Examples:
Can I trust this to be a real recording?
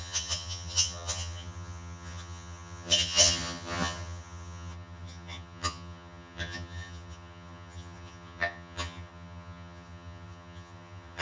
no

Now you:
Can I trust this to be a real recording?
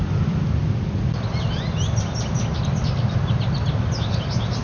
yes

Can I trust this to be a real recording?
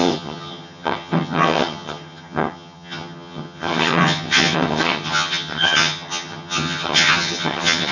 no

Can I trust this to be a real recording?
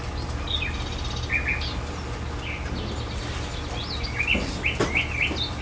yes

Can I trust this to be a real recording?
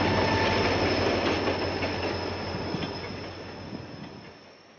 yes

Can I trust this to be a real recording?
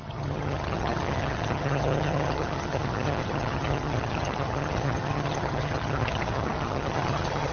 no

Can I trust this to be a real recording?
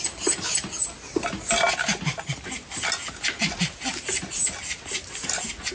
yes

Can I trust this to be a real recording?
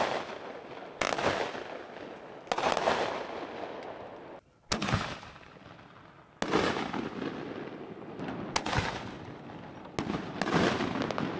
yes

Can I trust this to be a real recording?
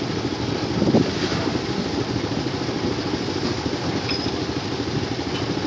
yes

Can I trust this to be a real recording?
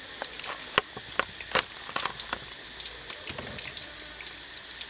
yes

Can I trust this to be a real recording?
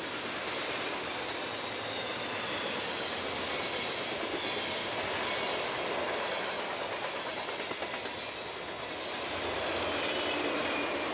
yes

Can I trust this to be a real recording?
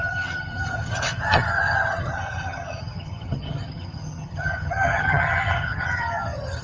no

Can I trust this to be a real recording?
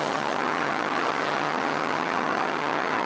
no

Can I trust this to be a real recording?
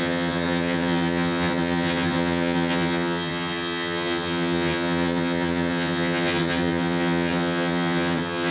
no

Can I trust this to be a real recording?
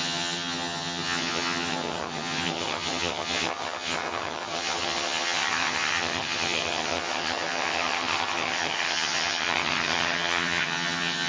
no